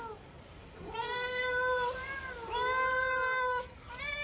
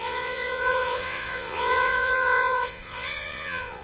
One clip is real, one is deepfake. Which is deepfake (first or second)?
second